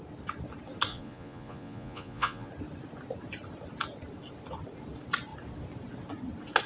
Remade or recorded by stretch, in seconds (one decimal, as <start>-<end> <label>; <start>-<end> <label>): 0.0-0.9 recorded; 0.9-2.5 remade; 2.5-6.7 recorded